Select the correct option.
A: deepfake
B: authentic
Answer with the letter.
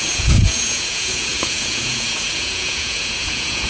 A